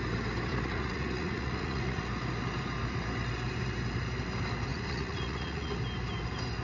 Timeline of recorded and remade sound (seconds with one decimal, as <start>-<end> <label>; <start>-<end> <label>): 0.0-0.5 recorded; 0.5-2.1 remade; 2.1-4.7 recorded; 4.7-5.8 remade; 5.8-6.6 recorded